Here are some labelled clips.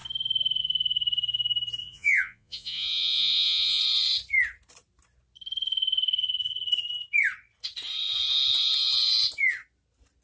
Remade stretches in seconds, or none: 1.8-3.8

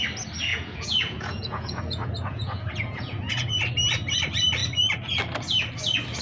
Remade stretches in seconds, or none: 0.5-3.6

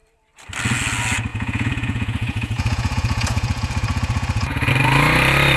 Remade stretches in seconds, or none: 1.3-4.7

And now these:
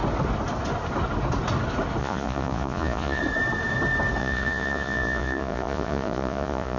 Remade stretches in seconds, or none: 2.0-3.2; 4.2-6.8